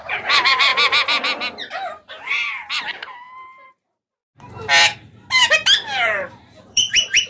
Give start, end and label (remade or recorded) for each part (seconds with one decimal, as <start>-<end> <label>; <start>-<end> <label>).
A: 0.0-0.7 remade; 0.7-1.7 recorded; 1.7-4.2 remade; 4.2-5.3 recorded; 5.3-7.3 remade